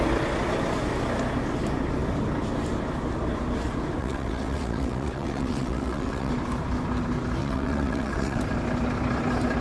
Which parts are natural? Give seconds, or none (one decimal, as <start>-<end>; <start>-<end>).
0.0-4.0; 6.3-7.4; 8.4-9.6